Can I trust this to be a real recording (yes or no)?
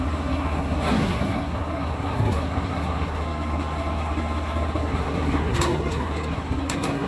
no